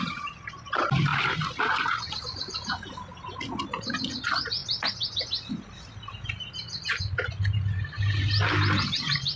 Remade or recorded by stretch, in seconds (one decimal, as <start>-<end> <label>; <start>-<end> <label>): 0.0-9.4 recorded